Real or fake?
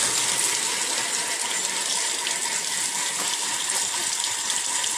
real